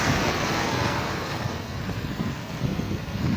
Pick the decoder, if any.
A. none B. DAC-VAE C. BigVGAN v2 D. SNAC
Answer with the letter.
D